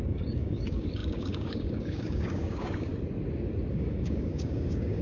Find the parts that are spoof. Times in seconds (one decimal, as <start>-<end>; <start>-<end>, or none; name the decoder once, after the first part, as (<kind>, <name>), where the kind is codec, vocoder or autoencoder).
0.0-2.9 (codec, DAC); 3.7-5.0

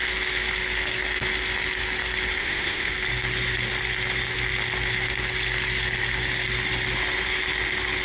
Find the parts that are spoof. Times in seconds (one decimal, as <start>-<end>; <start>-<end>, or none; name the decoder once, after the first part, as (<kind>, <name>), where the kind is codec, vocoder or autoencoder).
2.4-2.9 (autoencoder, DAC-VAE)

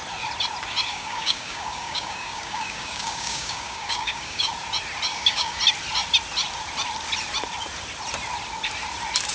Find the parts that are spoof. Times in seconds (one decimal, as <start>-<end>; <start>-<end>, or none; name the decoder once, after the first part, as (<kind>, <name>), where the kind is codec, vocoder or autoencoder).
0.9-4.5 (codec, DAC); 5.1-5.6

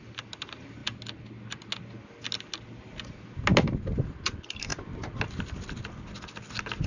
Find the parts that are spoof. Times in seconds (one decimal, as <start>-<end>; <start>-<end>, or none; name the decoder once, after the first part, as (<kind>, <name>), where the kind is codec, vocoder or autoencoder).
none

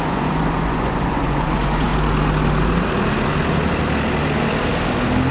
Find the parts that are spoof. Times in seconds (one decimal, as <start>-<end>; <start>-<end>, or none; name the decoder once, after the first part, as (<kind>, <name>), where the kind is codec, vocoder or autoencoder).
0.0-1.9 (vocoder, Vocos)

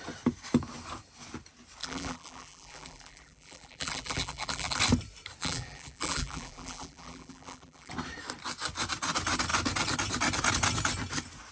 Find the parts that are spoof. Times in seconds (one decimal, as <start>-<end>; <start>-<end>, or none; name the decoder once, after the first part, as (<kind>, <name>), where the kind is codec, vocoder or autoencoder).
1.8-4.8 (vocoder, BigVGAN v2); 5.4-7.9

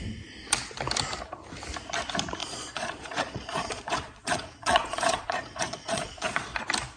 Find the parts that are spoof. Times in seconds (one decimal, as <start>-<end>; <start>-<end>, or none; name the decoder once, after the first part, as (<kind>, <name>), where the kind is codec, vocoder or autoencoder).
2.4-6.6 (vocoder, Vocos)